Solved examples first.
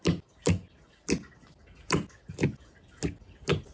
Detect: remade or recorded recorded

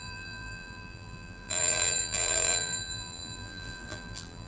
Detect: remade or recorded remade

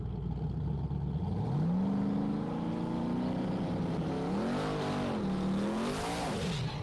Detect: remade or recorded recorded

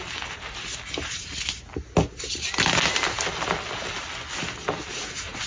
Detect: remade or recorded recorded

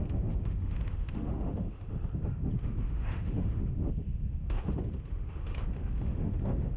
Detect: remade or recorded remade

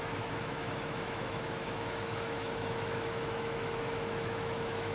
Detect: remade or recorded remade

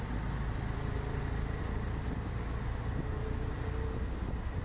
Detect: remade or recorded recorded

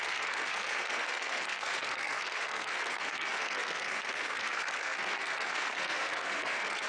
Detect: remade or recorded remade